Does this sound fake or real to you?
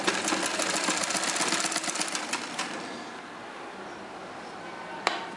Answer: real